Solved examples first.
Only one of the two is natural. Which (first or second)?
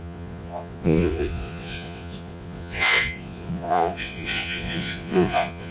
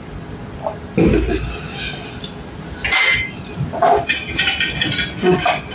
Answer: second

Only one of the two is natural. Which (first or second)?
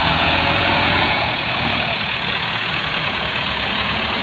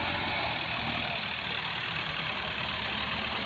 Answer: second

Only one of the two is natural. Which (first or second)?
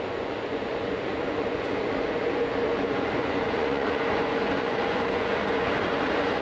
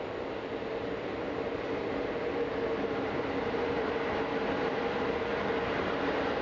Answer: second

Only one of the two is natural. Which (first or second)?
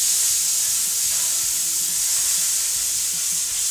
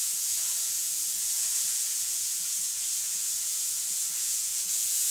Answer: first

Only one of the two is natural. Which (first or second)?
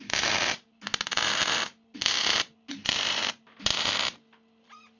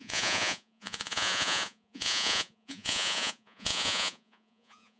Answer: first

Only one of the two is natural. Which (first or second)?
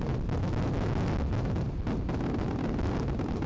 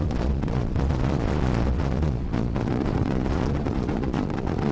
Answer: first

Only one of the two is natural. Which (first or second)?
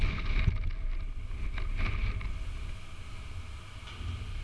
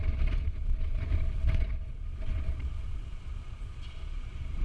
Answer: first